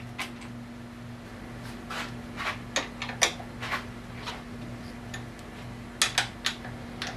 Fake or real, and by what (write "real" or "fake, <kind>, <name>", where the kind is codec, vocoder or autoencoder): real